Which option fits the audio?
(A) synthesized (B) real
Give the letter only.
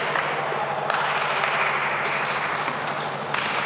B